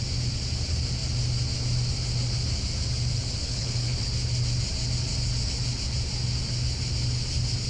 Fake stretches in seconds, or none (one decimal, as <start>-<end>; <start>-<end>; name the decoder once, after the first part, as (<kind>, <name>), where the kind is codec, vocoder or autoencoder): 3.4-4.1 (codec, HILCodec)

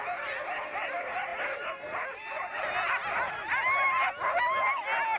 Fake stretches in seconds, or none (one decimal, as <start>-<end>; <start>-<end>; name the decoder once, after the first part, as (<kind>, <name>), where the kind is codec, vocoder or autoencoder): none

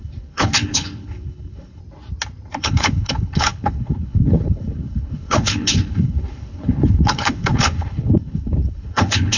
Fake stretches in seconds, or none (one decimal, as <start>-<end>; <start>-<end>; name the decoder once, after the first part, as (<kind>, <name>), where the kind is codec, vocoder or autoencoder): 0.0-1.8 (codec, HILCodec); 2.6-9.4

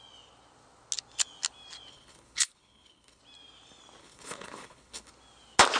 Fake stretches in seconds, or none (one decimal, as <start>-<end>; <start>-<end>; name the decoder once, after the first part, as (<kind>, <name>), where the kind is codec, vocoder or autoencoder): 1.9-3.2 (codec, HILCodec); 4.0-5.1

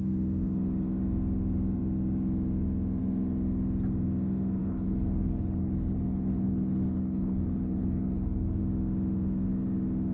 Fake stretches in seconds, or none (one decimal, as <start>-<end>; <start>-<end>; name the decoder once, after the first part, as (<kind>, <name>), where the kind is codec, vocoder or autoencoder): 4.6-8.6 (codec, HILCodec)

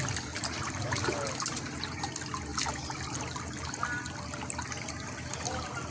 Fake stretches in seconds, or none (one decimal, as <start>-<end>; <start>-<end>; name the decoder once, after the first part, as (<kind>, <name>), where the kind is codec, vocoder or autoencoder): none